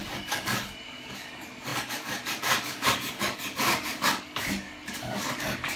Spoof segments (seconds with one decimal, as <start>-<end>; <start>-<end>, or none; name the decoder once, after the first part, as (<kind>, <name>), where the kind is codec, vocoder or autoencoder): 0.0-5.8 (codec, DAC)